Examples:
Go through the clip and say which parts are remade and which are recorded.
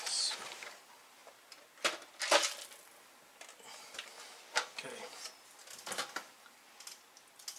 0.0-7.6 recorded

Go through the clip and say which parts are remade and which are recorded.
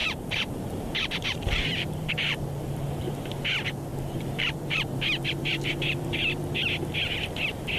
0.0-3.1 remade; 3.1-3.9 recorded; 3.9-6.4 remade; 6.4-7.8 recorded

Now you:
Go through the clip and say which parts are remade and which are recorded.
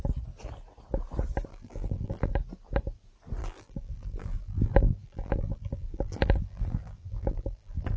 0.0-1.5 recorded; 1.5-2.3 remade; 2.3-3.4 recorded; 3.4-8.0 remade